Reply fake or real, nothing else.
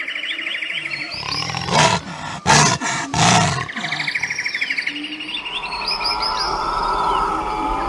real